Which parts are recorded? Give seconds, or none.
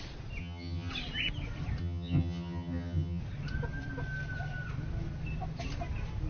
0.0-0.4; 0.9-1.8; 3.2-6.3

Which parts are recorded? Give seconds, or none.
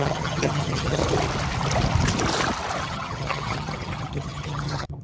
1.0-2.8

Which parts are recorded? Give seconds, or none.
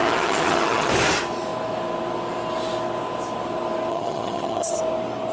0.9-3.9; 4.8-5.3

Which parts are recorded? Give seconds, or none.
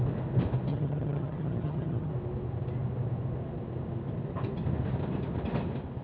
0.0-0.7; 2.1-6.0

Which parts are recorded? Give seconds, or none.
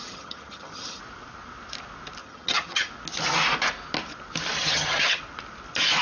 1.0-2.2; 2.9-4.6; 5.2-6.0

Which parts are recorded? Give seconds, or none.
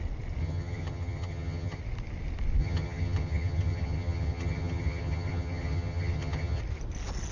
0.0-0.4; 1.8-2.6; 6.6-7.3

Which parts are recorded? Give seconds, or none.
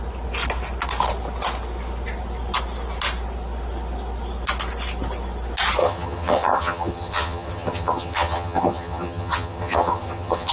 0.0-5.8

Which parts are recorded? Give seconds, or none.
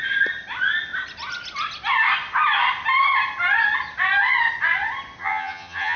0.0-5.2